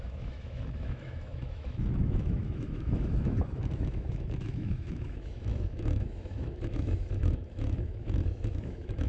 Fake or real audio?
fake